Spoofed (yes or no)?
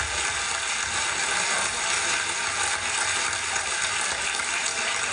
no